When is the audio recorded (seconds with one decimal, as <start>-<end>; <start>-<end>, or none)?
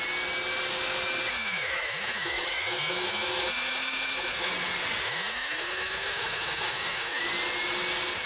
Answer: 0.0-1.3; 4.5-5.0; 7.2-8.3